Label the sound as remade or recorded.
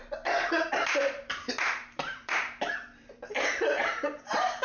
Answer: remade